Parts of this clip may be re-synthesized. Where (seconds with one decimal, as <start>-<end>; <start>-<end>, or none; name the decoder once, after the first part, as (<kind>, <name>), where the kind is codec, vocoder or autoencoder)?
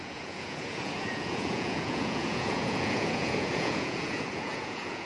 0.0-5.1 (vocoder, Vocos)